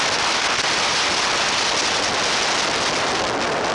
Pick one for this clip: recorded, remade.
recorded